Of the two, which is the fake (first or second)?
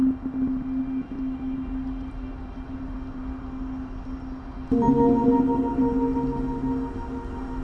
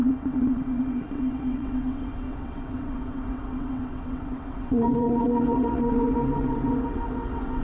second